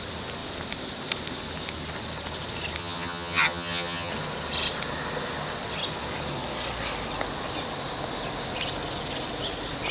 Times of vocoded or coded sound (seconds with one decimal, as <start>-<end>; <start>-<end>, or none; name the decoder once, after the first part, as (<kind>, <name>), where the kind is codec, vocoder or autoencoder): 2.8-4.1 (vocoder, HiFi-GAN)